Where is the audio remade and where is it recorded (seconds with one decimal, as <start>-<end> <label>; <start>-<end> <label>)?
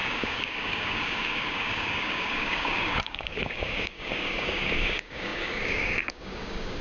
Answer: 0.0-6.8 remade